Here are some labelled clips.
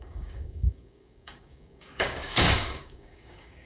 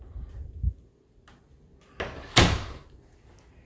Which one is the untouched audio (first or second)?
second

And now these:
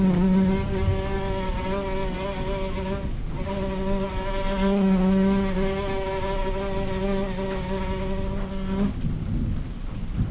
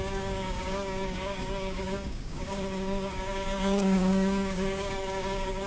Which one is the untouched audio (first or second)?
first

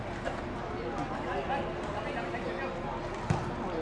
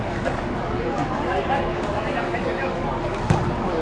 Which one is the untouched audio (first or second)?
first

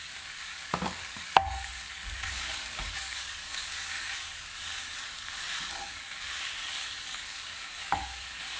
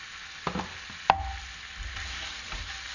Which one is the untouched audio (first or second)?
second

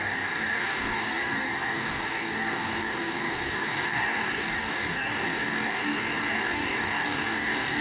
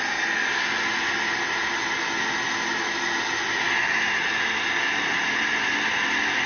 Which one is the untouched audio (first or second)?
second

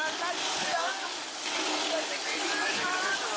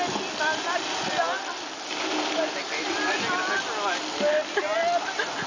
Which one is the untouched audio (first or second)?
second